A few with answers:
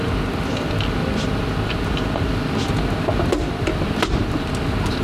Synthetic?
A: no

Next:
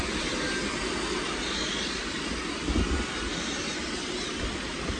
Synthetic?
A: no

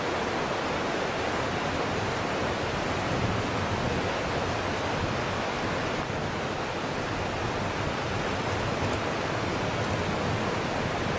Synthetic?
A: no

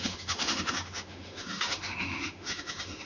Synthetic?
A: yes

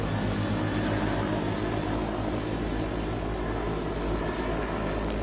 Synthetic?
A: no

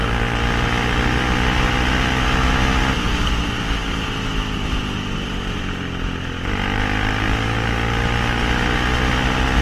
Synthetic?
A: no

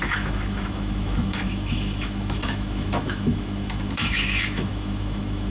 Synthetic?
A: yes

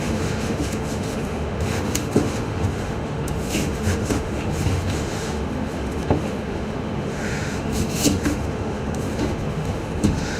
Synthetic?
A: yes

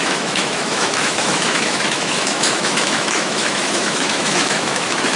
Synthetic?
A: yes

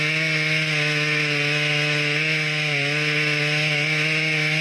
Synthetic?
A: no